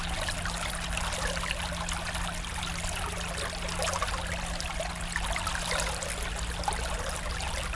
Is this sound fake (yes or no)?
no